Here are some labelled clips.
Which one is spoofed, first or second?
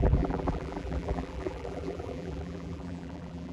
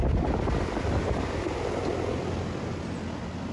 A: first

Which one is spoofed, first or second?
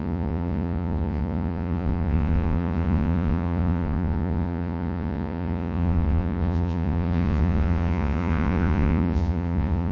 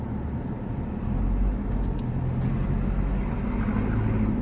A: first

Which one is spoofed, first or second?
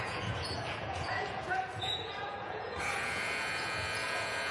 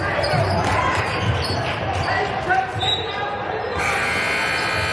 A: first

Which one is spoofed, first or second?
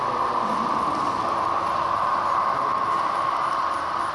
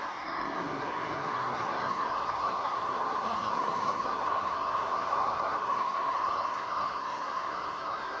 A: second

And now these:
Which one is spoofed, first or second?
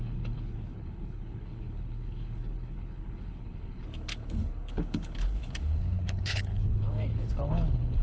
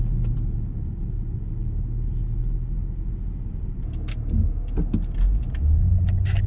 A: first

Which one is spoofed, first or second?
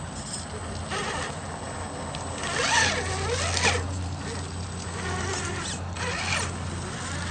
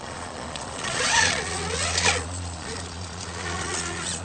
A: second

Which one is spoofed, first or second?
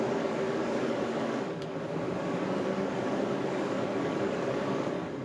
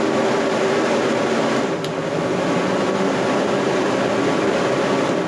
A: first